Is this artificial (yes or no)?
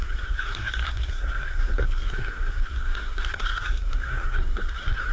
yes